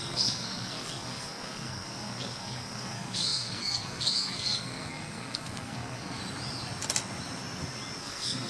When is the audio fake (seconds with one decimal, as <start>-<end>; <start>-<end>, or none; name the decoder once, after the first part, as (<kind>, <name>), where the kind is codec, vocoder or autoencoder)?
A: 0.0-6.2 (codec, SNAC); 8.0-8.5